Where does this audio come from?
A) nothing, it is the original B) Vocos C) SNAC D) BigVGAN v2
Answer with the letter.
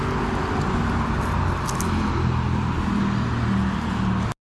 A